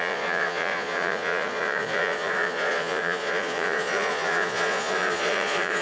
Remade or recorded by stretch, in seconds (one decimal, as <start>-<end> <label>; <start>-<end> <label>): 0.0-5.8 remade